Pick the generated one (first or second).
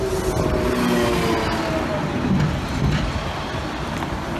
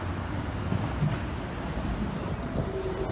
second